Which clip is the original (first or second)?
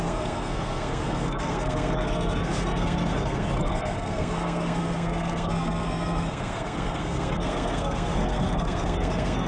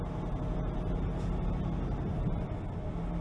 second